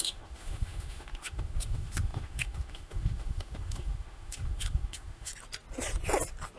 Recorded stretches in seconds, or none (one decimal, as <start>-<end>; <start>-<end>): 5.3-6.6